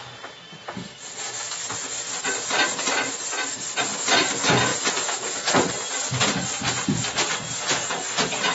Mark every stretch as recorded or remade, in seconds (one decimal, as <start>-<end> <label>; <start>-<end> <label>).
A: 0.0-8.5 recorded